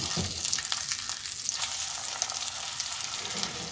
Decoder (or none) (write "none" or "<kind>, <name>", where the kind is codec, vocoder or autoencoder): none